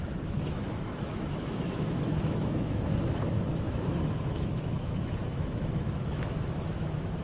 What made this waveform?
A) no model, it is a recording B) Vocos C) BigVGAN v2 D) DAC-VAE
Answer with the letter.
D